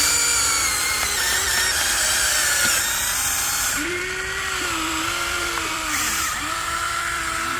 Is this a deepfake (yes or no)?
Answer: yes